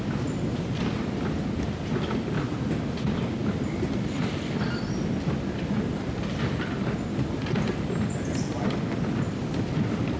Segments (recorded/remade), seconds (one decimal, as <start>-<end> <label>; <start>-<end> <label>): 0.0-10.2 recorded